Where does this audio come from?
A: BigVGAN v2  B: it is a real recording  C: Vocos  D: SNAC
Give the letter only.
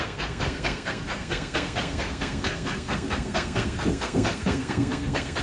D